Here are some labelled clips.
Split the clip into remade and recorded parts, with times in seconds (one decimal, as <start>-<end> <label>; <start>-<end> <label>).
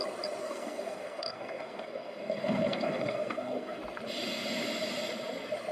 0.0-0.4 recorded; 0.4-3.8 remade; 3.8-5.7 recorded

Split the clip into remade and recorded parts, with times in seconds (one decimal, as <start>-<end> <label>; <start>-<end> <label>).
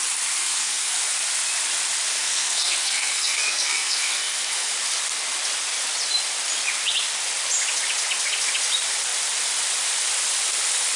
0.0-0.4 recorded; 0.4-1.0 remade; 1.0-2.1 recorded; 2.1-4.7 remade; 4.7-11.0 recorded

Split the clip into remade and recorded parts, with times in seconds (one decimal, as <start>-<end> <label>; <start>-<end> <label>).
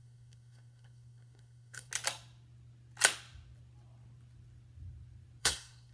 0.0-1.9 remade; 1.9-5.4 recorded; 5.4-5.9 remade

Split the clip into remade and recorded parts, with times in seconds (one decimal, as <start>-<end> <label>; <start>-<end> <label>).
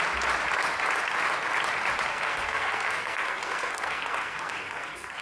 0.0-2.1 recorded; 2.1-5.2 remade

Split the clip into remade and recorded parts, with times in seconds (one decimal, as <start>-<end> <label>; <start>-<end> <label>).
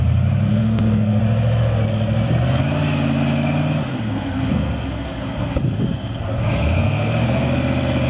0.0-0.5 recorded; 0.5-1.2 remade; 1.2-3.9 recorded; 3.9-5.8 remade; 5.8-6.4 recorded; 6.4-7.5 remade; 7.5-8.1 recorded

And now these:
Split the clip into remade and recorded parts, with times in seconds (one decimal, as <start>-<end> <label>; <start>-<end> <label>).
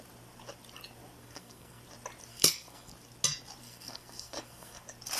0.0-1.2 recorded; 1.2-1.8 remade; 1.8-2.3 recorded; 2.3-2.9 remade; 2.9-3.6 recorded; 3.6-4.8 remade; 4.8-5.2 recorded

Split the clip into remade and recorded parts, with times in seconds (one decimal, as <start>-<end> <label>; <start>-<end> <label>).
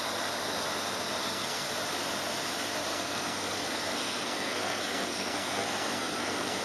0.0-1.2 recorded; 1.2-1.7 remade; 1.7-2.9 recorded; 2.9-6.6 remade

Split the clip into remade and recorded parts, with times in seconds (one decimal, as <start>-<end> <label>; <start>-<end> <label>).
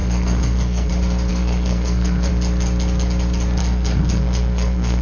0.0-0.9 remade; 0.9-1.3 recorded; 1.3-2.3 remade; 2.3-3.6 recorded; 3.6-5.0 remade